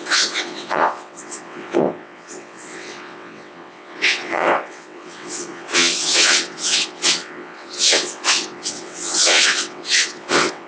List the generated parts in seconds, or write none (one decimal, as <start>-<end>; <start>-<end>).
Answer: 0.0-10.7